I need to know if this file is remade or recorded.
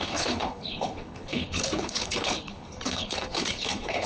remade